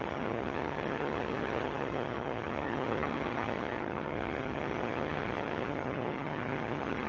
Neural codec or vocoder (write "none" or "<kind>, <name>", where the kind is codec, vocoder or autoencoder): vocoder, HiFi-GAN